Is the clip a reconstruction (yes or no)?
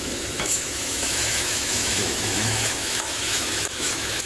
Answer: yes